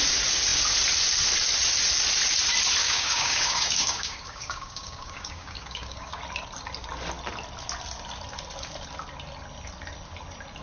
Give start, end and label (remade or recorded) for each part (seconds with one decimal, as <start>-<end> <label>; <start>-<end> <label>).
0.0-2.8 recorded; 2.8-6.2 remade; 6.2-10.6 recorded

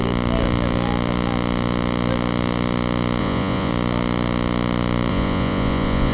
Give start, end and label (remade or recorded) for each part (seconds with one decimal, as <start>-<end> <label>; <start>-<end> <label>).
0.0-3.2 recorded; 3.2-3.7 remade; 3.7-5.1 recorded; 5.1-6.1 remade

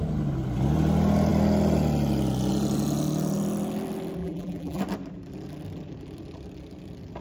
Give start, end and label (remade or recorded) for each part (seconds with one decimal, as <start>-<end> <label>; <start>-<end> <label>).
0.0-4.2 recorded; 4.2-4.8 remade; 4.8-7.2 recorded

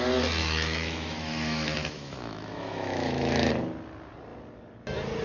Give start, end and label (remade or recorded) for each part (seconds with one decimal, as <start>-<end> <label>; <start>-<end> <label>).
0.0-0.4 recorded; 0.4-3.5 remade; 3.5-5.2 recorded

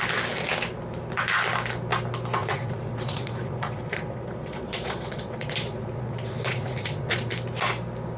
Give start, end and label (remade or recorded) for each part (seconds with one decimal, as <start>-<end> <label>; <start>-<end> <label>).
0.0-2.4 recorded; 2.4-7.3 remade; 7.3-8.2 recorded